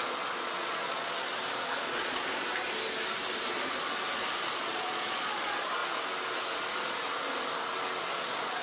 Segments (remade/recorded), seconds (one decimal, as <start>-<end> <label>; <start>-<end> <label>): 0.0-1.3 remade; 1.3-1.9 recorded; 1.9-2.5 remade; 2.5-4.7 recorded; 4.7-5.8 remade; 5.8-8.0 recorded; 8.0-8.6 remade